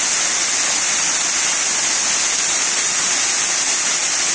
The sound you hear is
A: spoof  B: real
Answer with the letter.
B